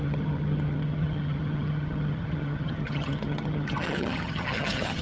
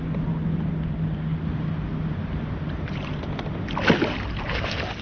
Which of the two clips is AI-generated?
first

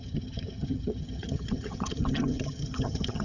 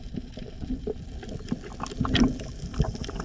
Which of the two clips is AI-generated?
first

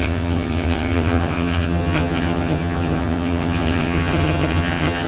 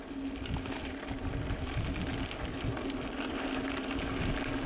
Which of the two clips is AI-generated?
first